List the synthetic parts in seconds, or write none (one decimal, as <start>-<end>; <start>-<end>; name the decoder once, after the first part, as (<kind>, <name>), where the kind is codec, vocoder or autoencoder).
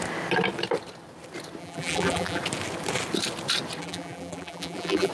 1.6-2.4 (vocoder, BigVGAN v2); 3.8-5.1